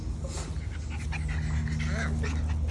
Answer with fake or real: real